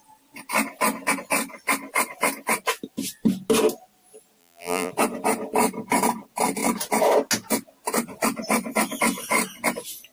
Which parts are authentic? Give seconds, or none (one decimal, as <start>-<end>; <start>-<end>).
0.0-4.4; 4.9-10.1